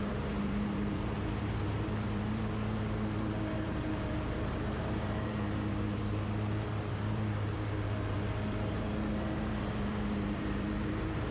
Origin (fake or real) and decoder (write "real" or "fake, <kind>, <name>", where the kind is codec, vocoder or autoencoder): fake, vocoder, BigVGAN v2